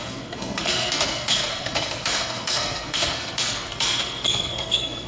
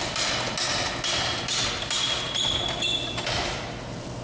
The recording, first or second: second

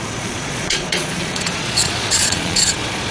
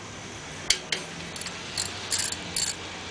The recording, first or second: second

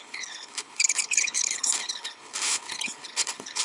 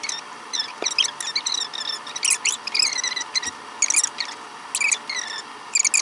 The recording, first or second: second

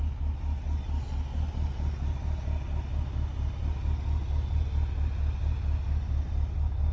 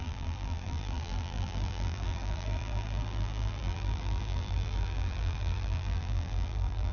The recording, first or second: first